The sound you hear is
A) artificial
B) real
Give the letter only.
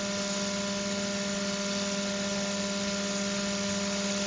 B